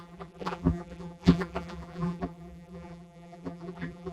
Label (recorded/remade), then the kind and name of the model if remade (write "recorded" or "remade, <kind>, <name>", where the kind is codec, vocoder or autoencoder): remade, vocoder, BigVGAN v2